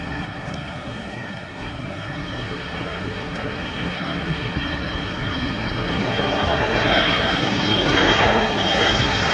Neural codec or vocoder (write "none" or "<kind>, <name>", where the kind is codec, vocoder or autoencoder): codec, SNAC